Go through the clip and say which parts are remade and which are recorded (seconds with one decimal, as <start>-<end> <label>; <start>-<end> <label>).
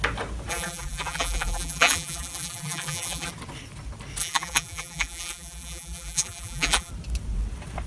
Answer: 0.0-0.5 recorded; 0.5-3.3 remade; 3.3-4.2 recorded; 4.2-6.9 remade; 6.9-7.9 recorded